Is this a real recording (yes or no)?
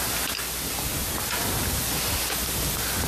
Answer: yes